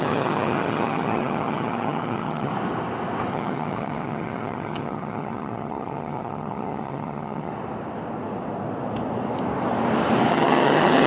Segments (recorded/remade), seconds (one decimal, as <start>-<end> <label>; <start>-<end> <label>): 0.0-2.5 remade; 2.5-3.3 recorded; 3.3-7.5 remade; 7.5-10.3 recorded; 10.3-11.1 remade